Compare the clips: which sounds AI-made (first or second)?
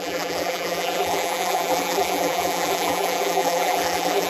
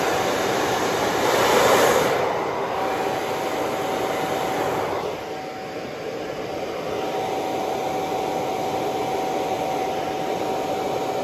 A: first